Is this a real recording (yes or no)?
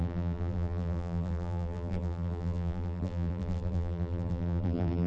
no